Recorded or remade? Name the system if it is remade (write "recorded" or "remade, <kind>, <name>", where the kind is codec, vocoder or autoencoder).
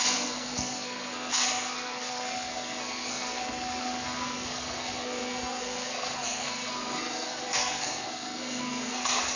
remade, codec, SNAC